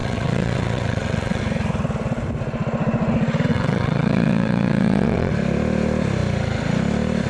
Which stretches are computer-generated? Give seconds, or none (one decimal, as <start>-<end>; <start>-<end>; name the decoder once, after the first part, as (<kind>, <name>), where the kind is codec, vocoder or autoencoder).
0.0-1.4 (vocoder, WaveNeXt); 3.5-5.3